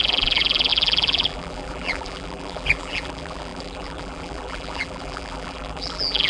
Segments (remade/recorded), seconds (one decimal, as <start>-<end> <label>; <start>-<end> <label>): 0.0-6.3 remade